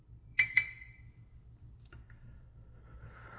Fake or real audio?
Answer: fake